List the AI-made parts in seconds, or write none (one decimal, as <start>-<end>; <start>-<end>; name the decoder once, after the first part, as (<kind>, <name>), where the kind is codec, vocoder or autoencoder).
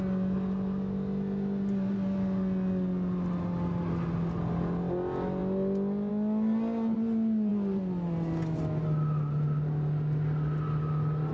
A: none